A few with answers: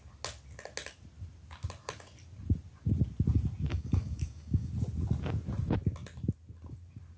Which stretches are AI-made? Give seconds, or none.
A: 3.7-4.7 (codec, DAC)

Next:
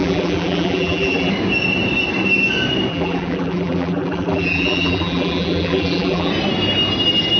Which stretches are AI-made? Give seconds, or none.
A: 0.0-1.3 (vocoder, BigVGAN v2); 2.9-6.3